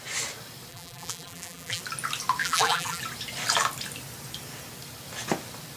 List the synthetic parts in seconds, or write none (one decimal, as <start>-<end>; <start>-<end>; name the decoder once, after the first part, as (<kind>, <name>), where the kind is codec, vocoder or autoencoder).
0.7-1.8 (vocoder, BigVGAN v2); 2.4-3.0